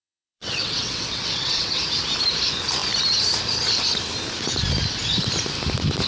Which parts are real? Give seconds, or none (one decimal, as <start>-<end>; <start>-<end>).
1.8-6.1